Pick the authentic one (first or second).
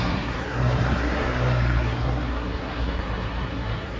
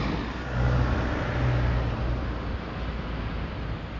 second